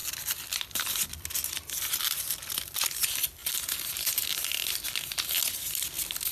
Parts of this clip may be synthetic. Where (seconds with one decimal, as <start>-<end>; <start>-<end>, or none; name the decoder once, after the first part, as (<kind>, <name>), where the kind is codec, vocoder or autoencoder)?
3.4-4.9 (vocoder, BigVGAN v2)